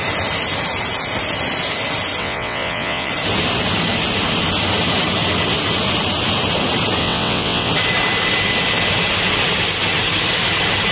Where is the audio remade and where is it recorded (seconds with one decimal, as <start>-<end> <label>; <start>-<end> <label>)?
0.0-2.2 recorded; 2.2-3.1 remade; 3.1-7.0 recorded; 7.0-7.7 remade; 7.7-10.9 recorded